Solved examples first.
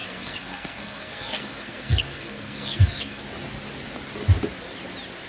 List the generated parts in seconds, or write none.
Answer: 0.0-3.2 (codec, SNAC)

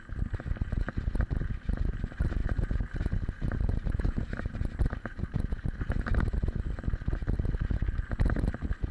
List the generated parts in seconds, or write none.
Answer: 2.4-6.2 (vocoder, BigVGAN v2)

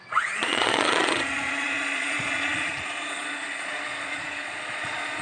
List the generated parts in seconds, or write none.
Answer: 0.0-5.2 (vocoder, Vocos)

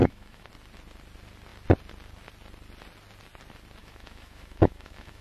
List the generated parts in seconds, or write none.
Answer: 0.0-0.5 (autoencoder, DAC-VAE); 3.8-5.2

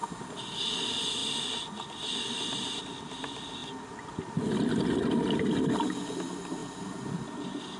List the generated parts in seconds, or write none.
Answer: 3.6-4.8 (vocoder, BigVGAN v2)